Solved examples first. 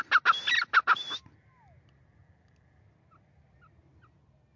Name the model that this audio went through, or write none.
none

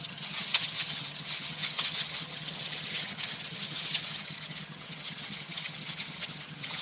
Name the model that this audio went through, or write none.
vocoder, HiFi-GAN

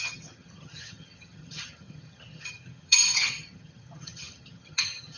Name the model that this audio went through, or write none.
vocoder, HiFi-GAN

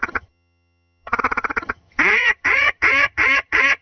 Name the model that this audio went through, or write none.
vocoder, HiFi-GAN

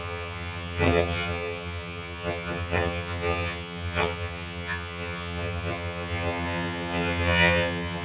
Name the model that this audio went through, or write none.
vocoder, HiFi-GAN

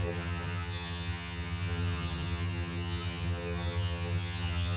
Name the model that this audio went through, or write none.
vocoder, HiFi-GAN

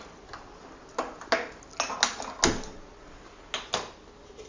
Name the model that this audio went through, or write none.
none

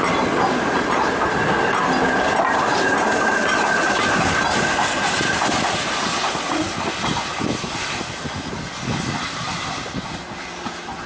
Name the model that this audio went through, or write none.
none